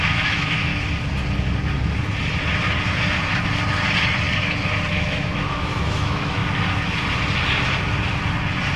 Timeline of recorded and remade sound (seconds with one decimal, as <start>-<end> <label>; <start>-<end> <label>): 0.0-0.7 remade; 0.7-4.9 recorded; 4.9-6.4 remade; 6.4-8.8 recorded